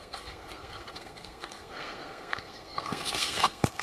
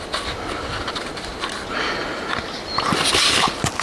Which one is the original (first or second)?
second